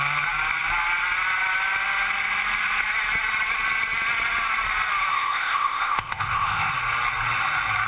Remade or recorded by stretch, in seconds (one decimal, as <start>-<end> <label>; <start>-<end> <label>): 0.0-5.1 recorded; 5.1-6.7 remade; 6.7-7.9 recorded